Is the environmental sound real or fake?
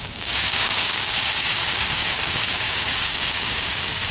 fake